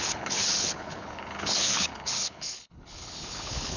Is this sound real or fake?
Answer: fake